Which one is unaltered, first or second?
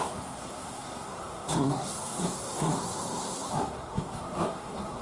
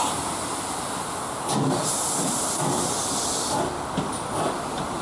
second